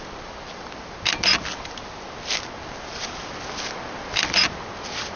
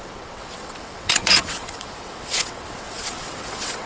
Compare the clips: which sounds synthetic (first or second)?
second